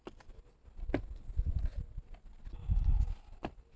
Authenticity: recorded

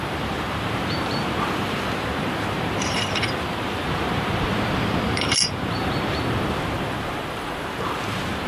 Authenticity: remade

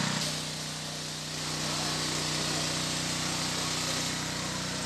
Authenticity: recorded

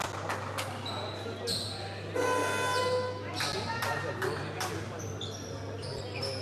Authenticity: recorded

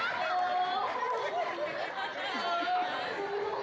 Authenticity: recorded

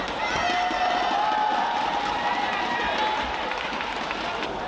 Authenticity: recorded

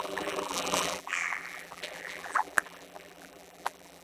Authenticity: remade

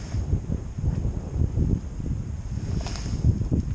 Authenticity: recorded